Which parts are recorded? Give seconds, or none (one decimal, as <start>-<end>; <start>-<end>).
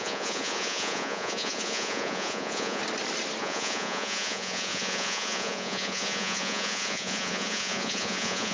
2.8-3.4